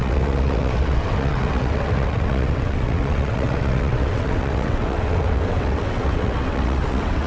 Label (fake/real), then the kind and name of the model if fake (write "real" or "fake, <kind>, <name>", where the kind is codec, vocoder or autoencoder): fake, vocoder, WaveNeXt